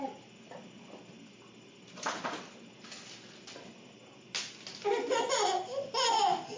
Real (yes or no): yes